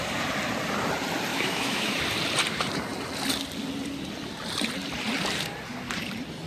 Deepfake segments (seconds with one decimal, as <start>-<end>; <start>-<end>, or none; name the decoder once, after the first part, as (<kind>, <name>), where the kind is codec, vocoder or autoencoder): 1.3-2.0 (autoencoder, DAC-VAE)